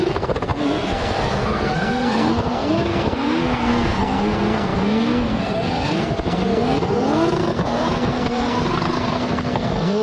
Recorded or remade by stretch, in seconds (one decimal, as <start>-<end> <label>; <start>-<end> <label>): 0.0-10.0 remade